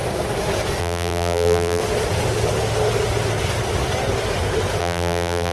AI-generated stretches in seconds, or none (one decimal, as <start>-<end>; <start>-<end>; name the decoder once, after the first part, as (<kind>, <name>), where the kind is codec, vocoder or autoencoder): 0.8-1.8 (vocoder, BigVGAN v2); 4.8-5.5